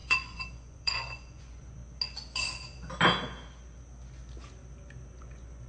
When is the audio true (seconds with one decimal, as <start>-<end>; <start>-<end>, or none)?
1.8-5.2